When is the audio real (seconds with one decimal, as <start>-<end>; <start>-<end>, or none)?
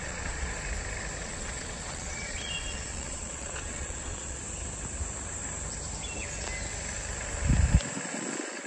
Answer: 0.5-1.2; 4.4-8.7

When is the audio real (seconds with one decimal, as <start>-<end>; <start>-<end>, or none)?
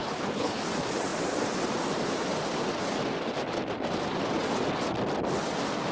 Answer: 0.6-5.9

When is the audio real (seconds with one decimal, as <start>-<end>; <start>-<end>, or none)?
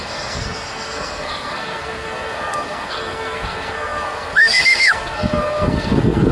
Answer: none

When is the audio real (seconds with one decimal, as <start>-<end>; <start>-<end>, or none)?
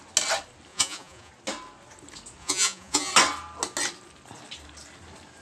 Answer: 0.0-0.7; 1.3-2.4; 3.1-5.4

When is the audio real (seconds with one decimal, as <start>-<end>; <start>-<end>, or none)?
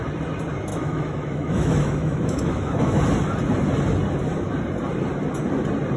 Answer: 0.0-0.7; 3.0-6.0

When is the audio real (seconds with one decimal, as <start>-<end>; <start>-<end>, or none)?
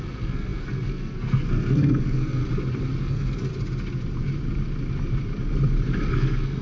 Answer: 2.4-3.0; 3.5-6.1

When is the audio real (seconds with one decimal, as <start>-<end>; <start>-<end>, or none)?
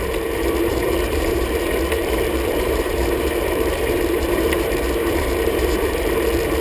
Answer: 0.0-0.7; 1.5-2.0; 6.0-6.6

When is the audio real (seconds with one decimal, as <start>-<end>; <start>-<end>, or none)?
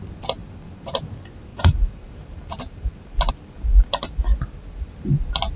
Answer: 0.0-0.4; 1.0-1.5; 3.3-5.6